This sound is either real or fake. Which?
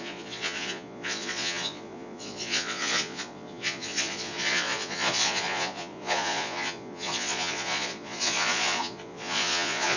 fake